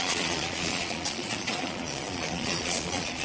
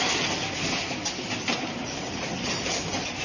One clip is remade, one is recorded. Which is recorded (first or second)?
second